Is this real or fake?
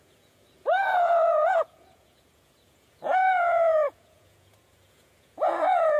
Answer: fake